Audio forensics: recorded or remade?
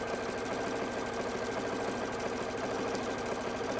recorded